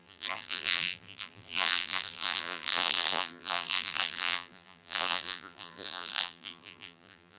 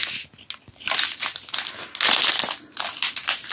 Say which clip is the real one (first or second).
second